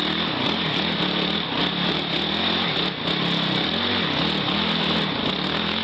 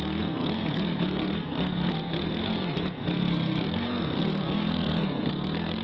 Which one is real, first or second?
first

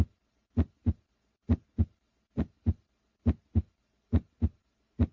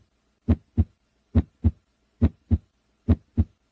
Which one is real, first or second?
second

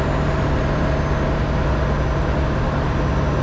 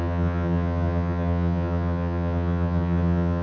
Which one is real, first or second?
first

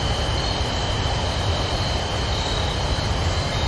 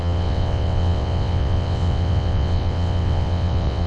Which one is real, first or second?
first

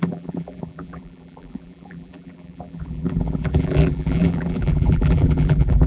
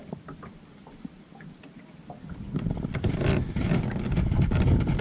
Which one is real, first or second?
second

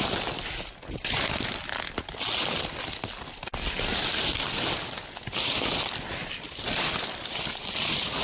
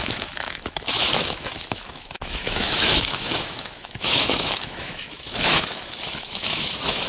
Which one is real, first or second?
first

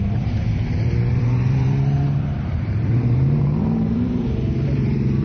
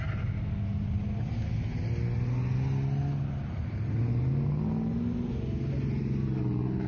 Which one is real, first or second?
second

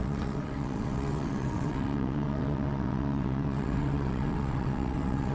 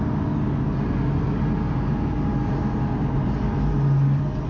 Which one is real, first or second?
second